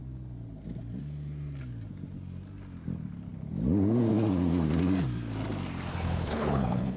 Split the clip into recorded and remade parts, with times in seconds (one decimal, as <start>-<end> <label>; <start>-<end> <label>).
0.0-5.9 recorded; 5.9-7.0 remade